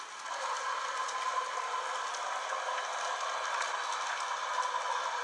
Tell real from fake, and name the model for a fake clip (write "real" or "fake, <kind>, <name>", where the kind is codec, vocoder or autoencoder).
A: real